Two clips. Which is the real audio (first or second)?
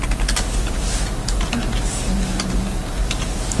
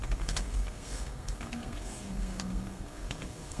first